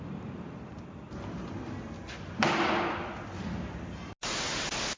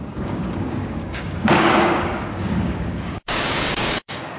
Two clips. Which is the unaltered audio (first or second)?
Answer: first